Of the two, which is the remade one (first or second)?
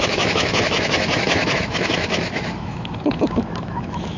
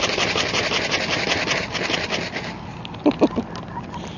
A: first